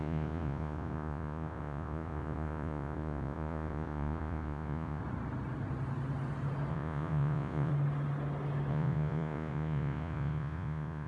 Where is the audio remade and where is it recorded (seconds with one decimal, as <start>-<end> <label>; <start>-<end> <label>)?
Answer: 0.0-5.0 remade; 5.0-6.7 recorded; 6.7-7.7 remade; 7.7-8.7 recorded; 8.7-11.1 remade